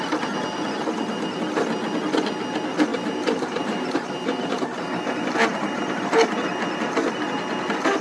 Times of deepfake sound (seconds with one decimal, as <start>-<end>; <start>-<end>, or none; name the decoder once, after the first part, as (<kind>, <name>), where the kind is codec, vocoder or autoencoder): 2.9-6.0 (vocoder, BigVGAN v2)